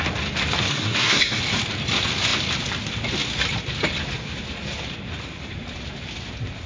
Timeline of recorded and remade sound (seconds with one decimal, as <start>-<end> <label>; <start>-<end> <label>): 0.0-0.7 recorded; 0.7-1.4 remade; 1.4-6.7 recorded